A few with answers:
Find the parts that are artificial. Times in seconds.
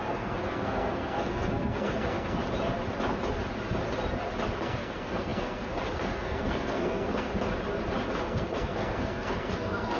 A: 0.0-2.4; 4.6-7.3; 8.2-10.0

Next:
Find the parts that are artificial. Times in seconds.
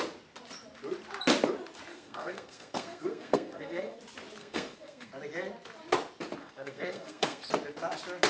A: 1.9-4.0; 4.4-5.1; 6.4-7.5